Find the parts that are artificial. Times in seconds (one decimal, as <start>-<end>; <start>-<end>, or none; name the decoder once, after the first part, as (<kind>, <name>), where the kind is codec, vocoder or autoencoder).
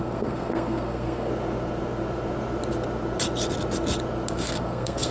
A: 0.0-1.3 (codec, SNAC); 4.3-5.1